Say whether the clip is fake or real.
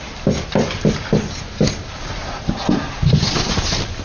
real